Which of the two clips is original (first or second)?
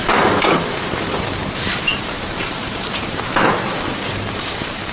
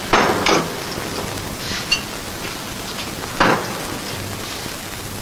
second